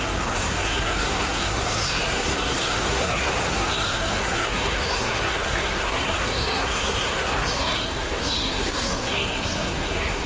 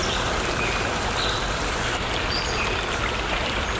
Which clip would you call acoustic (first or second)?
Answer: second